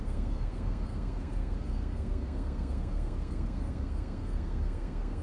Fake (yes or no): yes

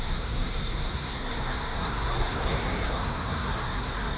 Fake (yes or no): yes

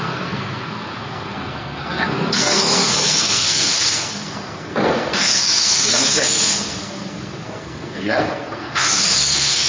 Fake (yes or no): yes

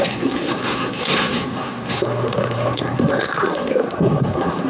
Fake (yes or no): yes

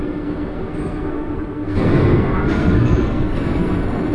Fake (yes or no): yes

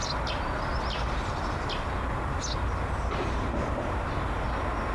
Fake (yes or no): no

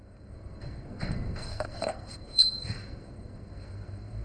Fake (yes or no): yes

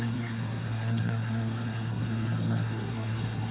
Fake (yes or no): yes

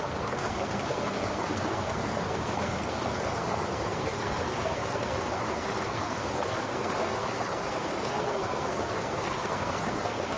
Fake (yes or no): yes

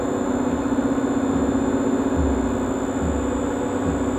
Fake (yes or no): no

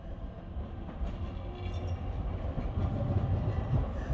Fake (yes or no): no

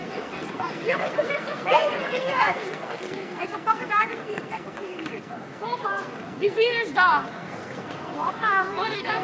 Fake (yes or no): yes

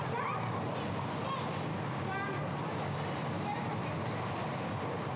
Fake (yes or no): no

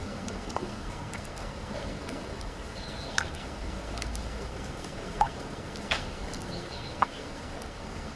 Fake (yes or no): yes